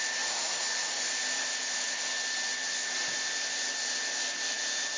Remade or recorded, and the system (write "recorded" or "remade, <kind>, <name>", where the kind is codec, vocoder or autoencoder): recorded